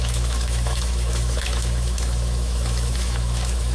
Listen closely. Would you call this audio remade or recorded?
remade